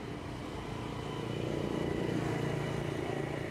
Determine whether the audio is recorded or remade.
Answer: recorded